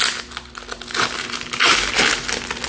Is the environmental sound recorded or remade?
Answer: recorded